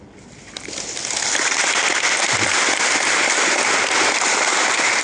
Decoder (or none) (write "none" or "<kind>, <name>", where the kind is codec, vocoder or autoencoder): vocoder, BigVGAN v2